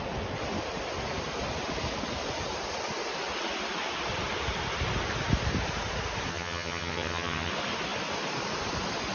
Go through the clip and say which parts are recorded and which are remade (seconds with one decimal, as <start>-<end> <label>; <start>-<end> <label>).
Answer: 0.0-6.3 recorded; 6.3-7.5 remade; 7.5-9.1 recorded